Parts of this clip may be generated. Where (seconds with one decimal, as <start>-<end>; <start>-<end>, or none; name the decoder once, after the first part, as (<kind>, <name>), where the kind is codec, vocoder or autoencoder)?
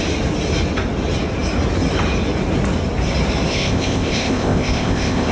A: 3.5-5.3 (codec, ZipCodec)